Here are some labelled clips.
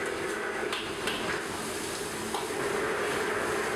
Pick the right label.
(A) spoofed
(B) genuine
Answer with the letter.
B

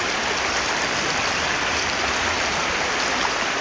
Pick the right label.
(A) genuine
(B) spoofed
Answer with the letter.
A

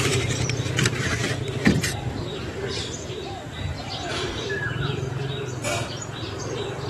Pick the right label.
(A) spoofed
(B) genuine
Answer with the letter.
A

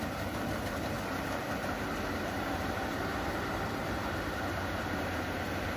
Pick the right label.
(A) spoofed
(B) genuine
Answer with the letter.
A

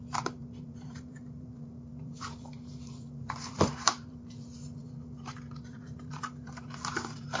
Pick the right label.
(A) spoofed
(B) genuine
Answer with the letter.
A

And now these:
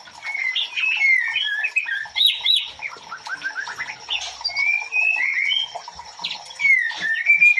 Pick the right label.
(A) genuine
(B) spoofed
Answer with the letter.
A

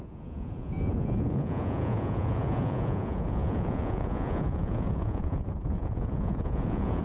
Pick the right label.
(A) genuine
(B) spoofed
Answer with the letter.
B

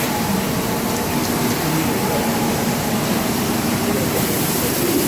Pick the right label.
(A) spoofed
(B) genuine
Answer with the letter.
A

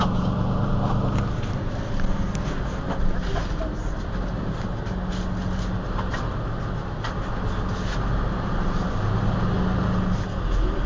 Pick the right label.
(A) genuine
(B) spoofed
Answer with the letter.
A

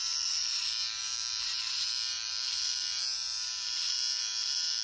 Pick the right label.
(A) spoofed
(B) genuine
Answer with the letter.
A